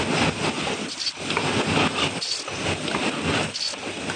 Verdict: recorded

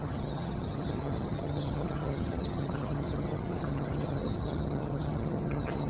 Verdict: remade